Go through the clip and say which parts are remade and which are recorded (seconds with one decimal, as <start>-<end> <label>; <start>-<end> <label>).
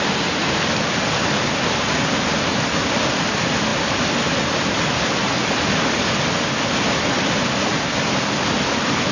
0.0-9.1 recorded